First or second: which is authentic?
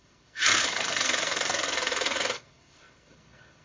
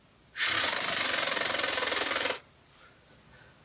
second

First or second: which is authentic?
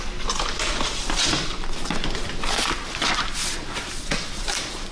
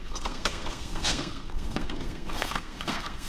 first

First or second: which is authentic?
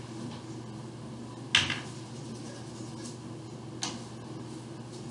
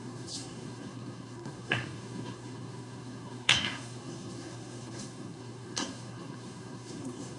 first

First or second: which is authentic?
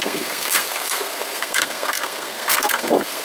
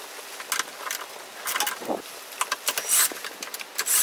second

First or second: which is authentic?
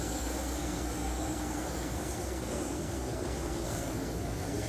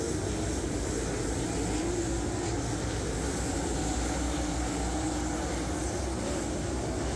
second